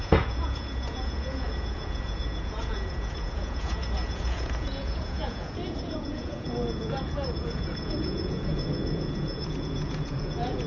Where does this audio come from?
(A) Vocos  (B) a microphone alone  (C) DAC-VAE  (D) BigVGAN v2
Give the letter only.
A